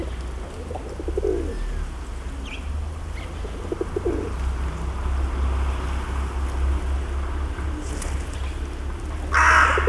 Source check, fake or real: real